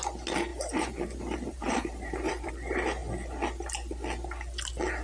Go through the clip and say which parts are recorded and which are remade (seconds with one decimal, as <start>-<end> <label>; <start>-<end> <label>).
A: 0.0-0.5 recorded; 0.5-2.5 remade; 2.5-5.0 recorded